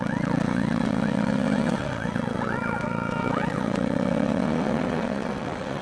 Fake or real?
fake